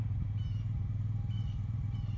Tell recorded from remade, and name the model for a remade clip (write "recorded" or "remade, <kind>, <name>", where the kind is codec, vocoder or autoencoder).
remade, vocoder, BigVGAN v2